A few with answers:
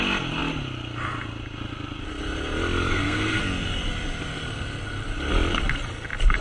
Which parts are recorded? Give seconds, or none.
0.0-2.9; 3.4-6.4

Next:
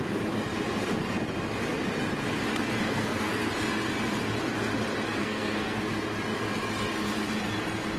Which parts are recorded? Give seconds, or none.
0.0-2.8; 3.5-5.2; 5.9-8.0